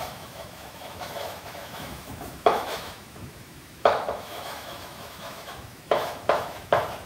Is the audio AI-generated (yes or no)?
yes